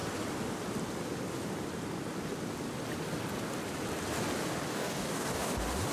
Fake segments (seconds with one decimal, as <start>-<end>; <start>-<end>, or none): 4.7-5.5

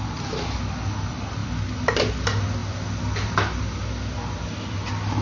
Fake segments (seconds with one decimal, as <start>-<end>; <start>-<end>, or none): none